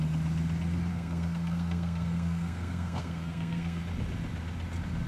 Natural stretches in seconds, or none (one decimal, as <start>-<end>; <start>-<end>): 0.0-0.9; 3.8-5.1

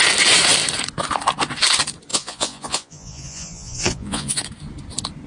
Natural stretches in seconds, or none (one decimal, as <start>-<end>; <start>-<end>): 0.0-2.1; 4.4-5.3

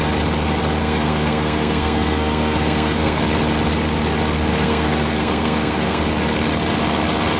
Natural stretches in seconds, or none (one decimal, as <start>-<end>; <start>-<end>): 0.0-0.8; 3.2-4.5; 6.0-7.4